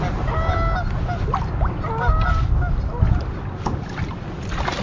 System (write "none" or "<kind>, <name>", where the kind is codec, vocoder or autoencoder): none